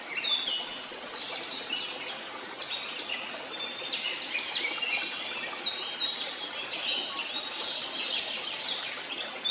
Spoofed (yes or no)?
no